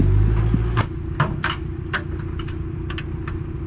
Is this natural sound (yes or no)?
yes